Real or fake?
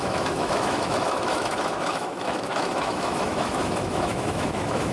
fake